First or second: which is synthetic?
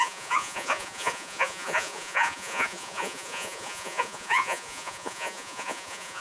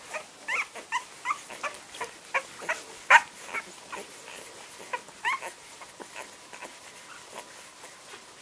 first